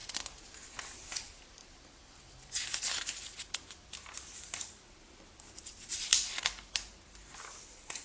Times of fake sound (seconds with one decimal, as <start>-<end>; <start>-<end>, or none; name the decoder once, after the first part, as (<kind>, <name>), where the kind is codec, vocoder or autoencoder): 0.0-8.0 (vocoder, BigVGAN v2)